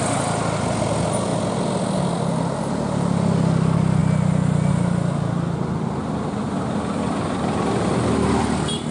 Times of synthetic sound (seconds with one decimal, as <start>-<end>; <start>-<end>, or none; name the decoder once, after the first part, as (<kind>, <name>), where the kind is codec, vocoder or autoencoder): none